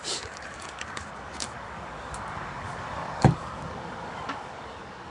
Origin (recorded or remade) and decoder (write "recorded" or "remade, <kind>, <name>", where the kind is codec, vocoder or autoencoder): remade, codec, DAC